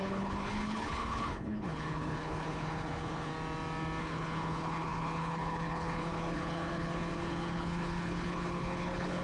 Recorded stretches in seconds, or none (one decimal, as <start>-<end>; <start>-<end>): 3.3-4.0